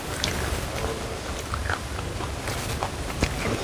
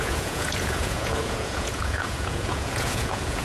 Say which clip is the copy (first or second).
second